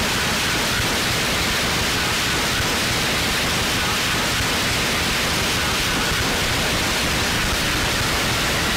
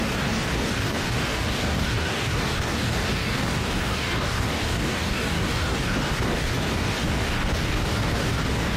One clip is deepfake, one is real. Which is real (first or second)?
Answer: first